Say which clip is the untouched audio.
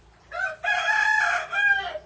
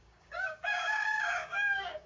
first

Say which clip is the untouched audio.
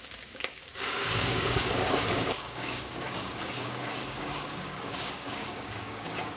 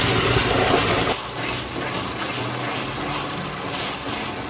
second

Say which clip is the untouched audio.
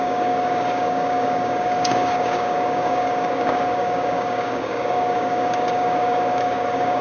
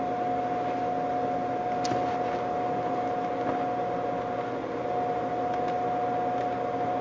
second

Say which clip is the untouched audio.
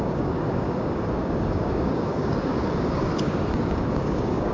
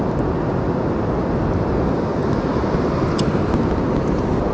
second